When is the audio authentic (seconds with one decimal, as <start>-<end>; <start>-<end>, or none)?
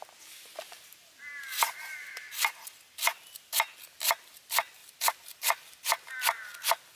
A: 0.0-4.8; 6.1-7.0